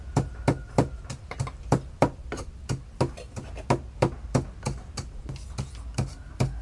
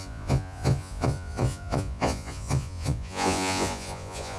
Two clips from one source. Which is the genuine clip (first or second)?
first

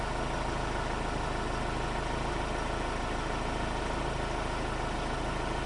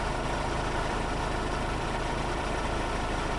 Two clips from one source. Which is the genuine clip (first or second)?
first